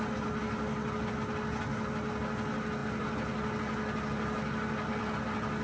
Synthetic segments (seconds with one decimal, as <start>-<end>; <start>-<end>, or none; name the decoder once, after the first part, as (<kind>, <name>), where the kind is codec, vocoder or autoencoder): none